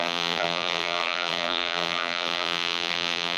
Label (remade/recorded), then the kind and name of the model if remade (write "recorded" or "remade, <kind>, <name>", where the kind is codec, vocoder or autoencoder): remade, vocoder, BigVGAN v2